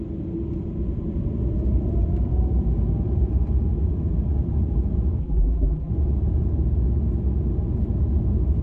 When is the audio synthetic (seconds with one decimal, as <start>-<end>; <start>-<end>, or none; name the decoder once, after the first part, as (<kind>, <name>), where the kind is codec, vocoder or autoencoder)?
5.2-5.9 (vocoder, BigVGAN v2)

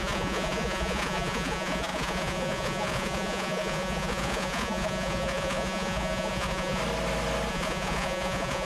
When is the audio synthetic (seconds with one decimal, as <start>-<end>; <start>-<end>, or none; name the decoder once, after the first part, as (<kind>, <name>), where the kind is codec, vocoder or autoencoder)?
0.0-6.8 (vocoder, Vocos); 7.5-8.7

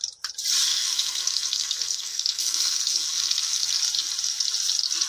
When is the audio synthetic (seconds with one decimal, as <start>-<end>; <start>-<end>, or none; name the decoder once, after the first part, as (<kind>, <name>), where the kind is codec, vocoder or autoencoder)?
0.7-3.8 (codec, SNAC)

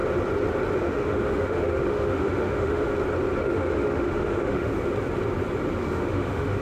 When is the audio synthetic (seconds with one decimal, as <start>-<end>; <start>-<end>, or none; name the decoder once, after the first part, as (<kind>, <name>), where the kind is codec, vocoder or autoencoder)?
0.8-2.9 (autoencoder, DAC-VAE); 3.4-4.7; 5.8-6.6

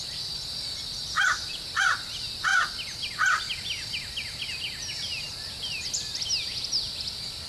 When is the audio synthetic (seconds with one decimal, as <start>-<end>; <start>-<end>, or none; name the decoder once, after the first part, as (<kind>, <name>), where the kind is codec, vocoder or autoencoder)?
none

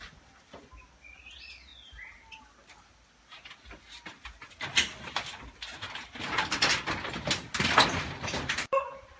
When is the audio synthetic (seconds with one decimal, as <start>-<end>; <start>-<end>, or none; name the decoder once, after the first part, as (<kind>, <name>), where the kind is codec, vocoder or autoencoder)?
none